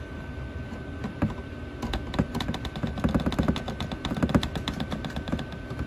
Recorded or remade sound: recorded